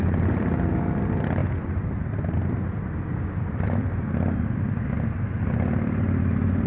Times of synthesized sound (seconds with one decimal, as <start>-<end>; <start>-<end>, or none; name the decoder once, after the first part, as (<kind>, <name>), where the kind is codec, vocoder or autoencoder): none